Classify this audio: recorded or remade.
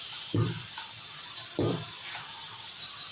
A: remade